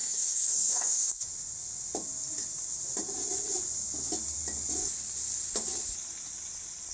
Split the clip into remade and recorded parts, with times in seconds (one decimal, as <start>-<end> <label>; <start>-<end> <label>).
0.0-1.3 remade; 1.3-6.9 recorded